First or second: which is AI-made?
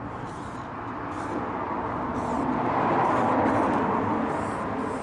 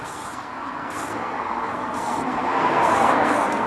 second